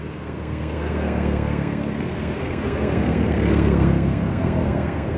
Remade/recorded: remade